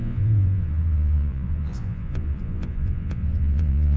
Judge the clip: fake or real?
fake